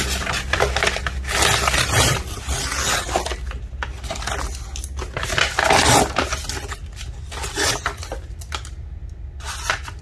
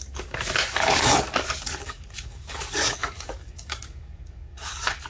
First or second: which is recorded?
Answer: first